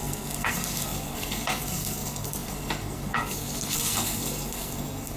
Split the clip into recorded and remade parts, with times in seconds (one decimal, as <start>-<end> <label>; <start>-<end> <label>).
0.0-5.2 remade